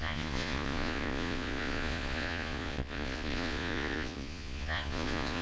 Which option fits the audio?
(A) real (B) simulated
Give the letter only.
B